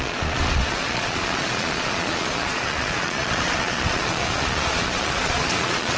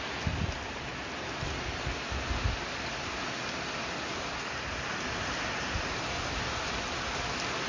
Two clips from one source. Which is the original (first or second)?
second